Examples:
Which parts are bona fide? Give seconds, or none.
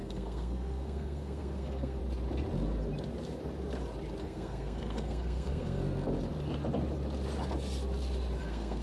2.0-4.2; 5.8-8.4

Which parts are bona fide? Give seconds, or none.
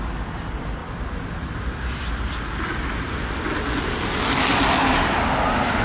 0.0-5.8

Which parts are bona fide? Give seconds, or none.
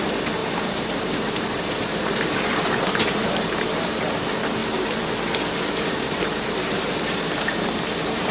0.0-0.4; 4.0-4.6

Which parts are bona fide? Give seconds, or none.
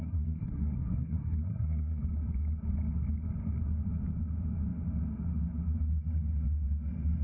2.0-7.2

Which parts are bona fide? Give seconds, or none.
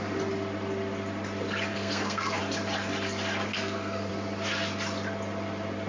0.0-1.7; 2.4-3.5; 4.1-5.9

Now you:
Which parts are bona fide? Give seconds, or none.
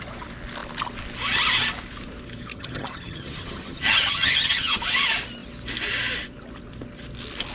0.0-2.5; 4.8-7.5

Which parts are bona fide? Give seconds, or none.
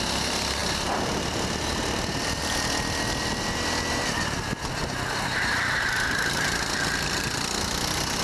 0.0-8.2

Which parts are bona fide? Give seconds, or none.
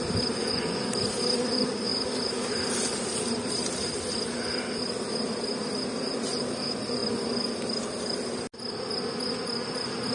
0.0-0.4; 0.9-10.1